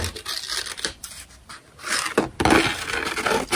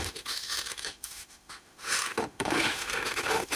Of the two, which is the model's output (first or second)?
second